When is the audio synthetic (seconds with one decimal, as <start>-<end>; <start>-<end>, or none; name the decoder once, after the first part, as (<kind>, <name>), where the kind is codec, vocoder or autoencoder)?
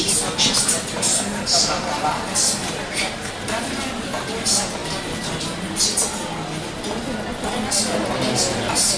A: none